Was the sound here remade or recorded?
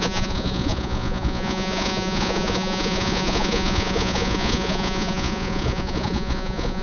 remade